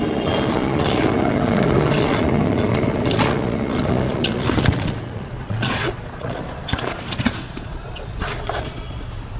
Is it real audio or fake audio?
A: fake